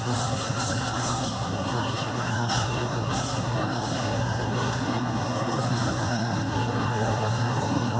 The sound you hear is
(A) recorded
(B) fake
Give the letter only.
B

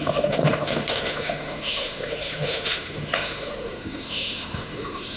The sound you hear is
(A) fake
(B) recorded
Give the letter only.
A